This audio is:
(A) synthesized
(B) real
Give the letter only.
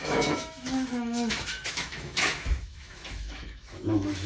A